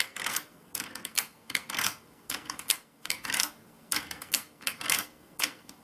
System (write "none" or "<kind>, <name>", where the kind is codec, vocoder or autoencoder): codec, SNAC